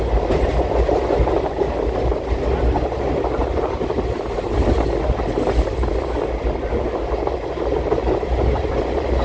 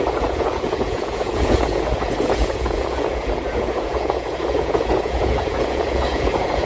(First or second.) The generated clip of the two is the second